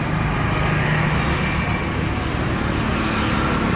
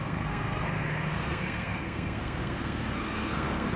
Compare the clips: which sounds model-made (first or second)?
second